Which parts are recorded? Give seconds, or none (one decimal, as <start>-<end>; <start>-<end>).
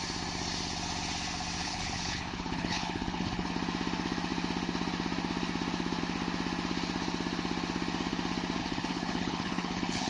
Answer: 0.0-1.6; 3.5-8.6